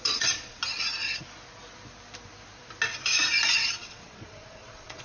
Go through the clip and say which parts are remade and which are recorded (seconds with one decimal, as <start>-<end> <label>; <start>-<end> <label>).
0.0-0.6 remade; 0.6-3.6 recorded; 3.6-5.0 remade